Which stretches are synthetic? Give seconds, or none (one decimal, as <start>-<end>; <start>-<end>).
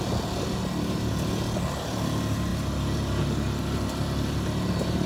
none